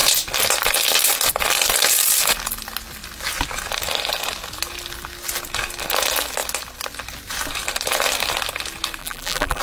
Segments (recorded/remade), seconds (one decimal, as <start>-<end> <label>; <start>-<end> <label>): 0.0-9.0 recorded; 9.0-9.6 remade